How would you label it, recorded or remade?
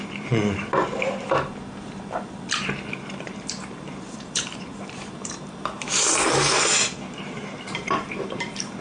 remade